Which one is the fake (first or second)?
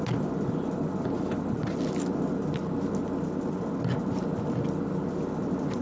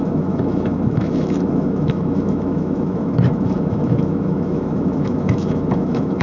second